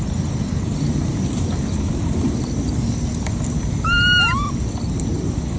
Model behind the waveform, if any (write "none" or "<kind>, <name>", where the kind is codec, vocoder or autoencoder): none